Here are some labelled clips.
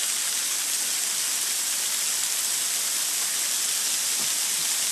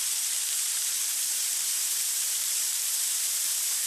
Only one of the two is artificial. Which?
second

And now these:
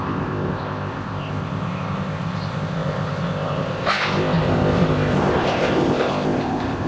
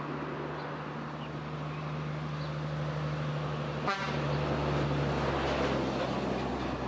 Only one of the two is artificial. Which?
first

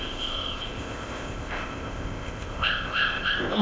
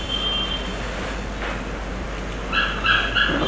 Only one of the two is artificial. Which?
first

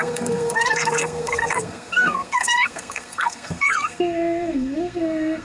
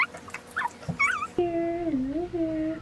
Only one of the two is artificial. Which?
first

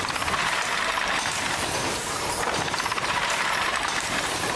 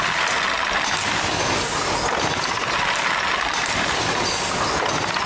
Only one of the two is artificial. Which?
first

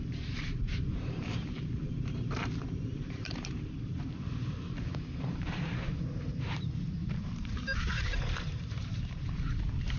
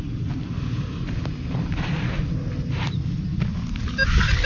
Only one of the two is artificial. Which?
first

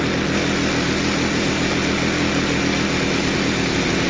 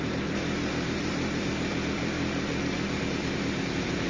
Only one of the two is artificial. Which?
second